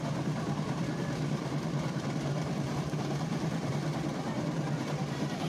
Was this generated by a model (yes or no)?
yes